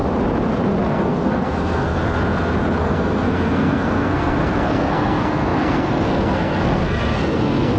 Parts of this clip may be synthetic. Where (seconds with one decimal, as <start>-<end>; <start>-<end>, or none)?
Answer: 0.8-2.0; 2.8-7.8